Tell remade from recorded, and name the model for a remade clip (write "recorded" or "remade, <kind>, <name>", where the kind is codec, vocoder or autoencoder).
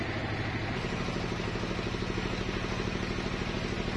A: recorded